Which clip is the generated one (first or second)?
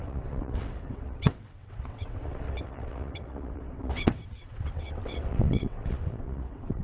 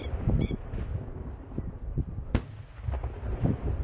first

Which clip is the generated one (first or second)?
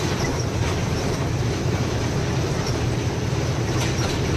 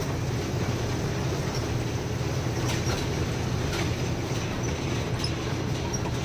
first